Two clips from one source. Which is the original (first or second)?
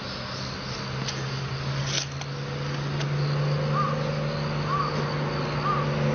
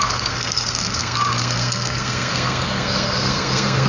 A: first